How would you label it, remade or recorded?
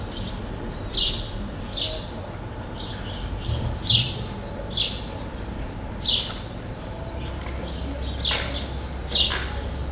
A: recorded